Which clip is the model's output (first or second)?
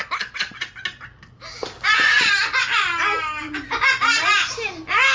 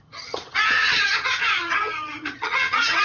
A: second